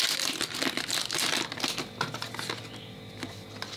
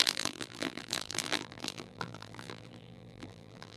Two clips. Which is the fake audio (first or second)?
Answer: second